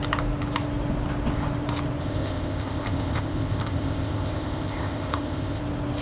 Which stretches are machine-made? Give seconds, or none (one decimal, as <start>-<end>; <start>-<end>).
2.0-5.6